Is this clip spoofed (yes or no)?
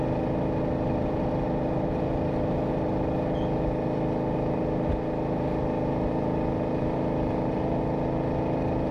no